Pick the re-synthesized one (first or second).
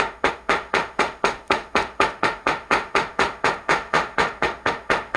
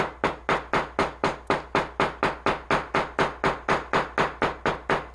first